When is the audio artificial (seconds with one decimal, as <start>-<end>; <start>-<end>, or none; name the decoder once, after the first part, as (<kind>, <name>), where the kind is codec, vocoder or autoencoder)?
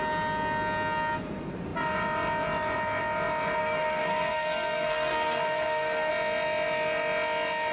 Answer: 3.6-6.1 (codec, SNAC)